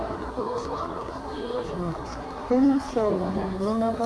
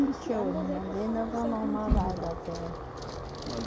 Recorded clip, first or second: second